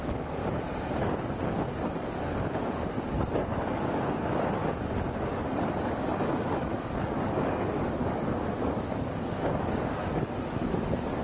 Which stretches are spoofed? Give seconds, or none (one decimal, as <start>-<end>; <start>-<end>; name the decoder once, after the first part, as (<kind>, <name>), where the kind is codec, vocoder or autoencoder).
0.0-0.4 (codec, DAC); 1.8-4.6; 5.8-11.2